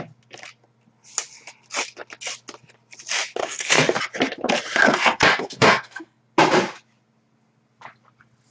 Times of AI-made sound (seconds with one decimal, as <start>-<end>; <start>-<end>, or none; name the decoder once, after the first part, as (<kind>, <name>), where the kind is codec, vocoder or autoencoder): 3.4-4.0 (codec, SNAC); 4.8-6.2